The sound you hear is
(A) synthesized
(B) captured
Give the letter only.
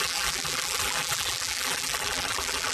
A